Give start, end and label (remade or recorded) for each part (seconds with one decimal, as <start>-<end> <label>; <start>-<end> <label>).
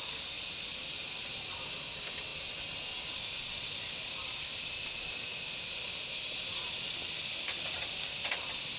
0.0-8.8 recorded